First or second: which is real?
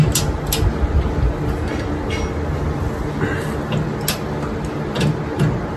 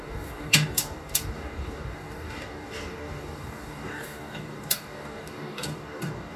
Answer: first